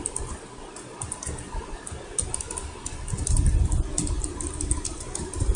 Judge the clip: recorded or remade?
recorded